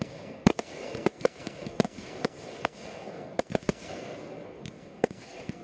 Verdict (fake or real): fake